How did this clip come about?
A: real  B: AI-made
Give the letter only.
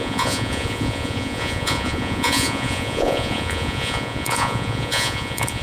B